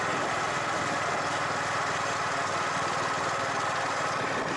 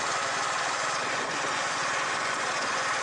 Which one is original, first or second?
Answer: first